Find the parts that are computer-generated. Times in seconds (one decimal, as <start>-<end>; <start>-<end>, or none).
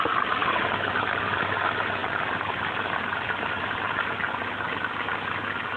0.4-0.9; 2.0-3.8